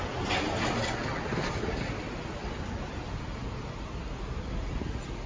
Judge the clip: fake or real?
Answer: real